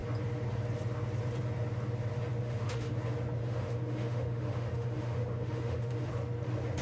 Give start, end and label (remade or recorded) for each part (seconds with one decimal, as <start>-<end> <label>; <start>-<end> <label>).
0.0-2.4 recorded; 2.4-2.9 remade; 2.9-3.4 recorded; 3.4-6.1 remade; 6.1-6.8 recorded